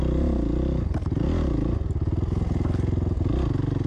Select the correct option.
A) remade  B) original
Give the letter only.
B